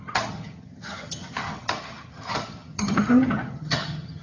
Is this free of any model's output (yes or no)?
no